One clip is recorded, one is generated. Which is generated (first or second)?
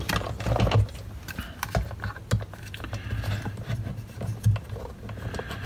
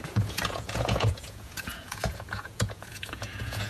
second